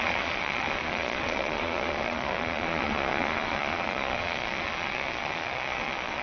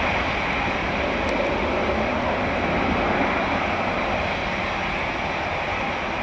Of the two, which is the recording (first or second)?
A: second